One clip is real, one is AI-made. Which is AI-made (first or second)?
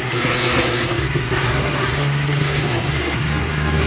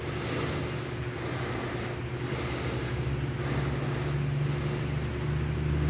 first